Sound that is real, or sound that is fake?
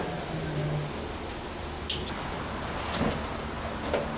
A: real